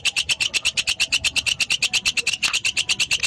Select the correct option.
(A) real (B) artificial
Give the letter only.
A